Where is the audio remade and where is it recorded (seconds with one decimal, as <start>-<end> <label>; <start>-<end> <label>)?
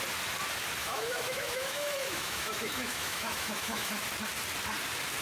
0.0-0.8 recorded; 0.8-3.9 remade; 3.9-5.2 recorded